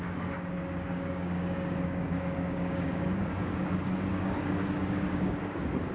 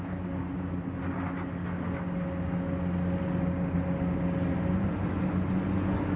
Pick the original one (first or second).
second